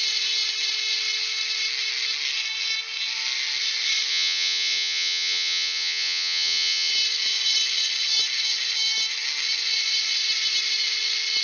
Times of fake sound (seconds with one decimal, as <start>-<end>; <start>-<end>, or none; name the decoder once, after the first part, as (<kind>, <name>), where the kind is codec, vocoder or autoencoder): 4.1-6.9 (vocoder, Vocos)